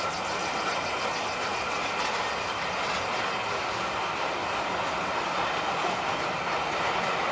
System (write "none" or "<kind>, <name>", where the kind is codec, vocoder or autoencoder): none